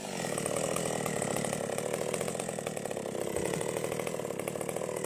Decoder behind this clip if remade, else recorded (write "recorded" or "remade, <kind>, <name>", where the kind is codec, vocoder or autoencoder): recorded